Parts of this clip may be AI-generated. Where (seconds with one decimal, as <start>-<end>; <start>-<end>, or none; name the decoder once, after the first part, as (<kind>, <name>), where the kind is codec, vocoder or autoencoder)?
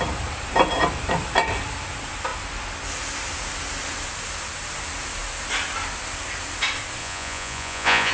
7.0-8.1 (vocoder, Vocos)